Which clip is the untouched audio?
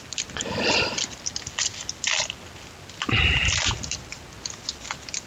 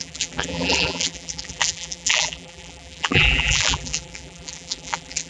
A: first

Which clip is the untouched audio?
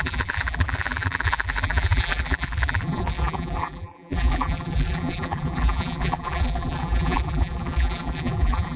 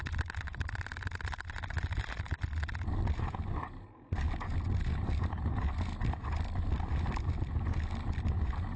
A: second